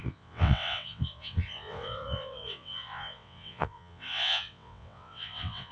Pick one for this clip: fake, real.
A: fake